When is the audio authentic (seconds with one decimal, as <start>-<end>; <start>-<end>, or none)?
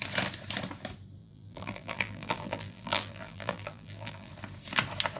0.0-1.2; 4.3-5.2